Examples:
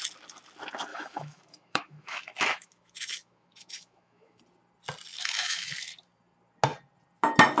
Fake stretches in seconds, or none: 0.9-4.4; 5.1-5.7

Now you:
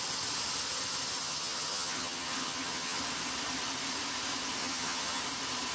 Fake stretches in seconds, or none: 1.2-3.0; 4.6-5.2